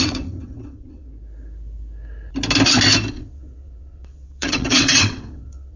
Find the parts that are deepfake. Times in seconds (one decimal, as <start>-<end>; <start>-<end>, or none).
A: 0.0-1.1; 3.1-5.8